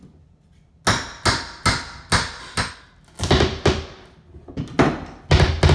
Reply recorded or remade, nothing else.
recorded